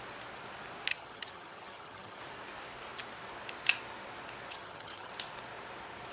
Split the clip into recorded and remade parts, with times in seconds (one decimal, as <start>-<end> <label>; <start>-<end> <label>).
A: 0.0-0.9 recorded; 0.9-2.2 remade; 2.2-4.5 recorded; 4.5-5.1 remade; 5.1-6.1 recorded